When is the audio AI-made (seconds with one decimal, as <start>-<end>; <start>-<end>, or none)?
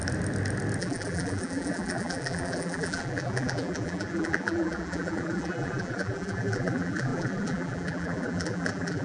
0.8-9.0